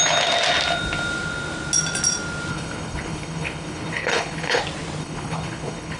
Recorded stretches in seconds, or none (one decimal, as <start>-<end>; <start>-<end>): 0.0-2.5; 4.6-5.0